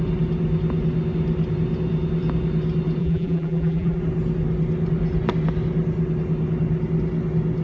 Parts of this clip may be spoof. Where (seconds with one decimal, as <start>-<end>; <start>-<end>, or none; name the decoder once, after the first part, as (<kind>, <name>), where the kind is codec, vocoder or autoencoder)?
3.0-4.0 (vocoder, BigVGAN v2)